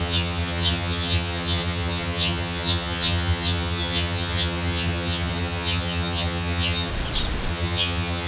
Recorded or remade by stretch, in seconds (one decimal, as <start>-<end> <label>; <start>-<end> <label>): 0.0-6.9 remade; 6.9-7.5 recorded; 7.5-8.3 remade